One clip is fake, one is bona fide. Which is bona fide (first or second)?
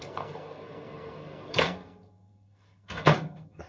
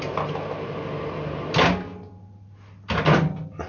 second